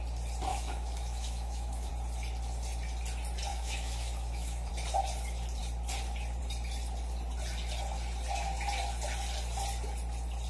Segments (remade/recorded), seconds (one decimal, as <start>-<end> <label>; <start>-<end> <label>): 0.0-0.5 recorded; 0.5-1.9 remade; 1.9-3.5 recorded; 3.5-4.7 remade; 4.7-10.5 recorded